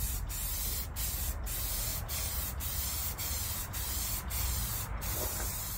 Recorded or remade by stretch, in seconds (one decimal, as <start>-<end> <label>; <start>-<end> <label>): 0.0-1.9 recorded; 1.9-5.8 remade